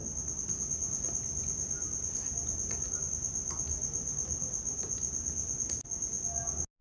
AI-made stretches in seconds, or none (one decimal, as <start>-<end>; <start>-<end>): none